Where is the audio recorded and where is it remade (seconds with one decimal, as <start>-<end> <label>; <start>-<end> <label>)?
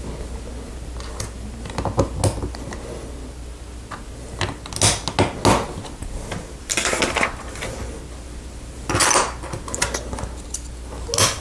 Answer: 0.0-11.4 recorded